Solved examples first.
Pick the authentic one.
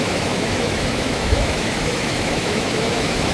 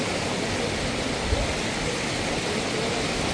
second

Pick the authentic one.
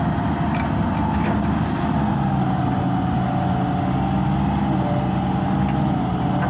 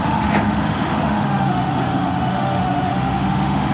first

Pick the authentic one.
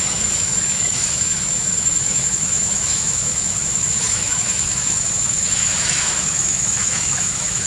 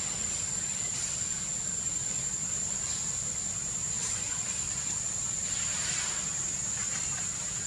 second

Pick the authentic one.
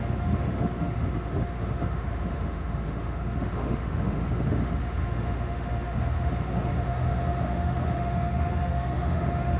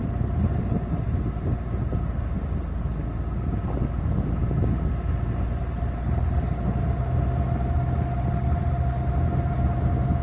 second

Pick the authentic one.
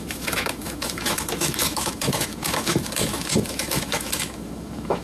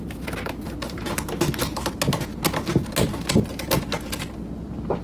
second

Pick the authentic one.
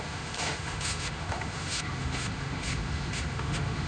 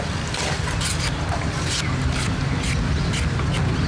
second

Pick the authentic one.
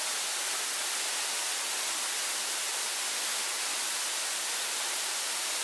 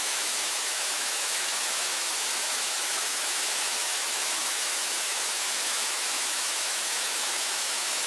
first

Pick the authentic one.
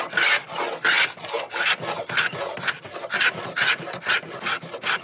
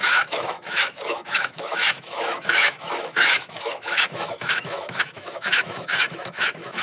first